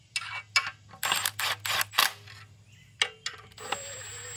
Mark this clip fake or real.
real